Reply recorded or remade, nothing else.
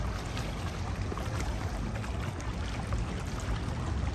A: recorded